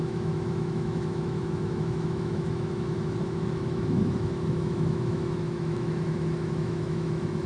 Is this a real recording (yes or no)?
no